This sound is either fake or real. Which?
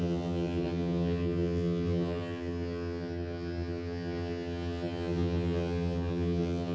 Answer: fake